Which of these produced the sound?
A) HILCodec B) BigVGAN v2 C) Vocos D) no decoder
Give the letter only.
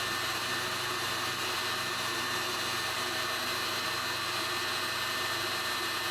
D